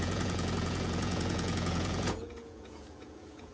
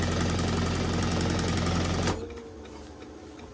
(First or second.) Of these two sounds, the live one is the second